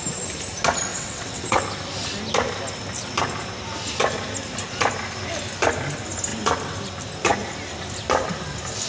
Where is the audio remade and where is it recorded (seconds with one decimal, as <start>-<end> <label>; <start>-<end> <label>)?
0.0-0.9 recorded; 0.9-1.6 remade; 1.6-8.9 recorded